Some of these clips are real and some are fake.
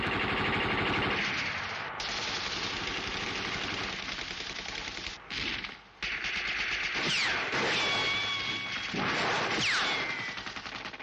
real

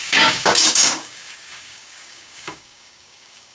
fake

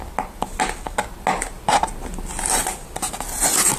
real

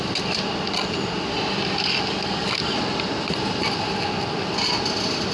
real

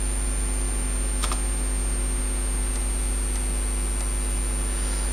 real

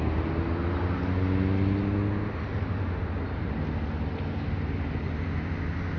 real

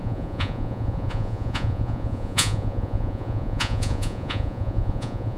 fake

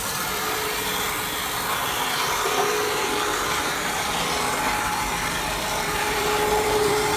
fake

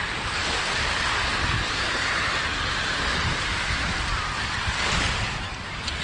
real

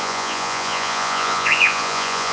fake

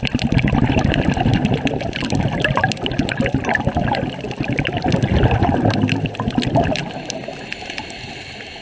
real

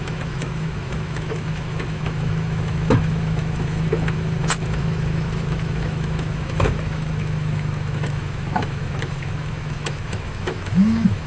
fake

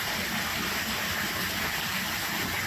real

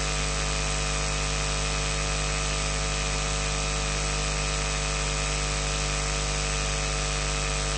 real